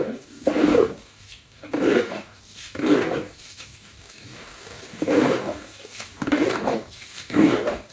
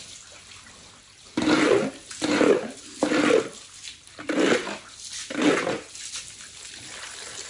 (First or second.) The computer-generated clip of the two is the first